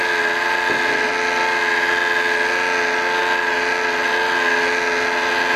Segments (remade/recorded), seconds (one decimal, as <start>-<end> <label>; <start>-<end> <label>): 0.0-5.6 recorded

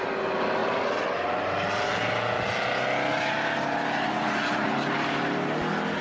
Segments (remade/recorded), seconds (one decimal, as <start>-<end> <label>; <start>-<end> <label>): 0.0-6.0 recorded